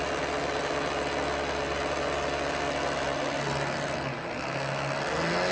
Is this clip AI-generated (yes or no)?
no